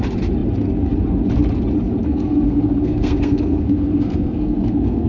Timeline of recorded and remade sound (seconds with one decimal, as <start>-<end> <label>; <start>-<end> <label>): 0.0-2.0 recorded; 2.0-5.1 remade